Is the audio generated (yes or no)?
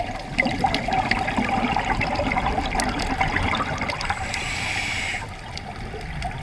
no